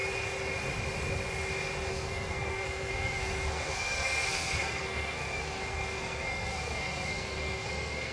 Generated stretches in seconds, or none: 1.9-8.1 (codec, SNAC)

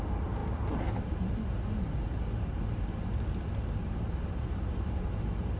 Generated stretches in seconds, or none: none

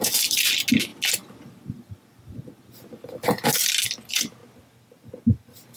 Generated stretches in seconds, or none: none

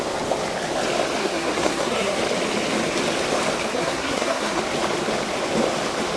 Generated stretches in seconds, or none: 1.2-2.2 (codec, SNAC); 3.7-4.6

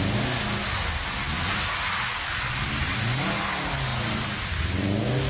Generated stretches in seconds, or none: none

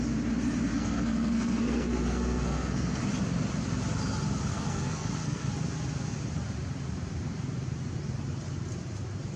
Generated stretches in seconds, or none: 0.7-3.0 (codec, SNAC); 4.5-5.5

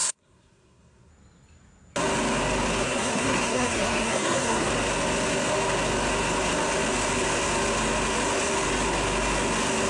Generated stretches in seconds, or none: 0.0-1.1 (codec, SNAC); 2.8-4.7